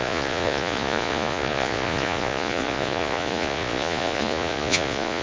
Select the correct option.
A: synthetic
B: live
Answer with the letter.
A